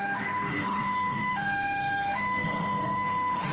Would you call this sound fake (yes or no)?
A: yes